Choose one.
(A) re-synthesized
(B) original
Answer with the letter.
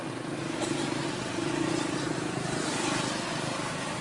B